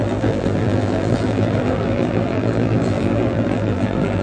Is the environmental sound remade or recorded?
remade